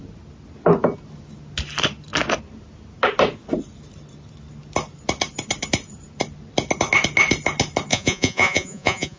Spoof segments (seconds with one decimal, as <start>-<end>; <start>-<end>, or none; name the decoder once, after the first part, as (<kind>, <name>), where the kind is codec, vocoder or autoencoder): 7.9-9.2 (vocoder, Vocos)